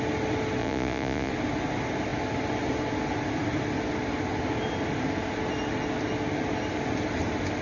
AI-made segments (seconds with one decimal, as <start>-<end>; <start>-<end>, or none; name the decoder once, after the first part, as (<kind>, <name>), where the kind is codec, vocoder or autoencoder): 0.6-1.3 (vocoder, Vocos)